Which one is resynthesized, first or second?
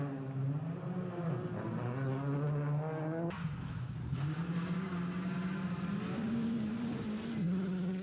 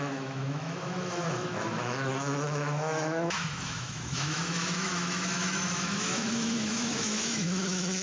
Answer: second